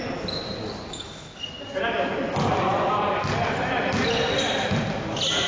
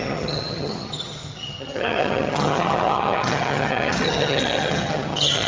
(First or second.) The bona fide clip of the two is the first